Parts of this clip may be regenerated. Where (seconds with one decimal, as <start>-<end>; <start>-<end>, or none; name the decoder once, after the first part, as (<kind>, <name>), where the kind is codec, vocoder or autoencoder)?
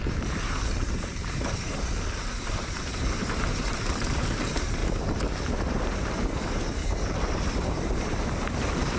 0.0-4.8 (vocoder, BigVGAN v2); 5.7-9.0